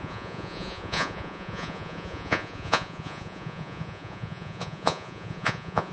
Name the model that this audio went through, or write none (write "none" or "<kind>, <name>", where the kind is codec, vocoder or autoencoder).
vocoder, Vocos